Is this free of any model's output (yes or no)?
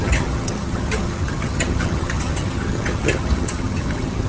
no